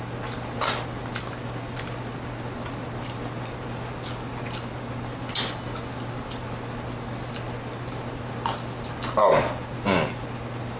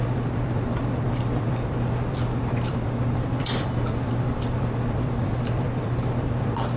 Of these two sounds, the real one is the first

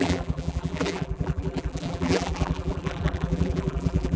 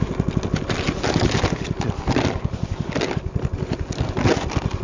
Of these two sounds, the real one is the second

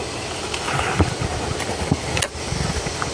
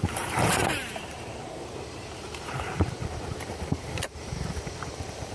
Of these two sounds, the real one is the first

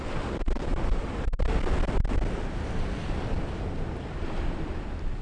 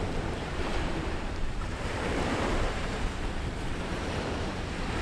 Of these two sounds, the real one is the first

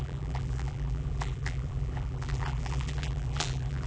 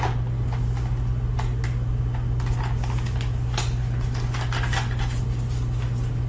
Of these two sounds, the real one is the second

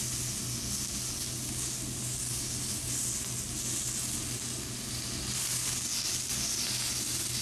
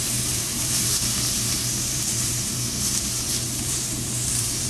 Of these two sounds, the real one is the first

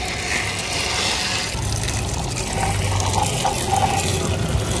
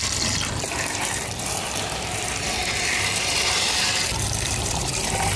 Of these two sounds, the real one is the first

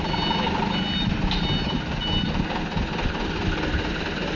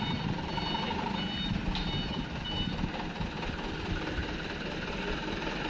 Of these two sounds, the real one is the first